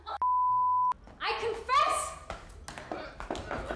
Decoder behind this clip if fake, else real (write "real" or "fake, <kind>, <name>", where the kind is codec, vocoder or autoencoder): real